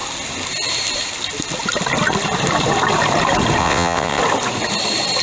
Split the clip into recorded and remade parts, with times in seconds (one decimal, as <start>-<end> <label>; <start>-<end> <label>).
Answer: 0.0-3.6 recorded; 3.6-4.2 remade; 4.2-5.2 recorded